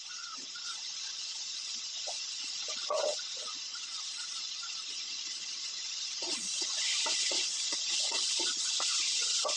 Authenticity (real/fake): fake